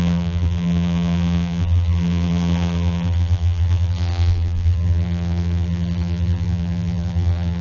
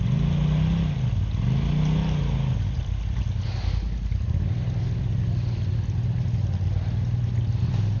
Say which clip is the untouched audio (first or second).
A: second